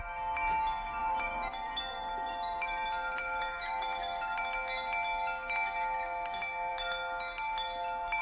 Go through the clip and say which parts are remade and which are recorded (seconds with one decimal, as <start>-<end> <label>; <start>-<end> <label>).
0.0-1.0 recorded; 1.0-4.4 remade; 4.4-8.2 recorded

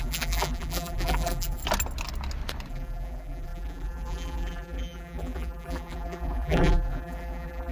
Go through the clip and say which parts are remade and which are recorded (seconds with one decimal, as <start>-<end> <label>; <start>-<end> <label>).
0.0-1.6 remade; 1.6-2.7 recorded; 2.7-7.7 remade

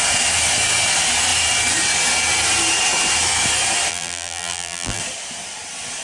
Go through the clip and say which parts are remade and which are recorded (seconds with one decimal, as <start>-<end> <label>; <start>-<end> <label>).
0.0-3.9 recorded; 3.9-5.0 remade; 5.0-6.0 recorded